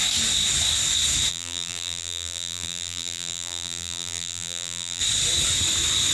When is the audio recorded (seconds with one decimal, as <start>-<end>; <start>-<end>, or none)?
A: 0.0-1.3; 5.0-6.1